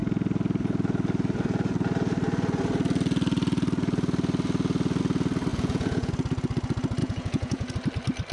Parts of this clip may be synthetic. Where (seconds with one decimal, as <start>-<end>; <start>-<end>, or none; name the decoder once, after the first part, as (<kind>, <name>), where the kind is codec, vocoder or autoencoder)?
5.5-6.1 (vocoder, Vocos); 7.0-7.7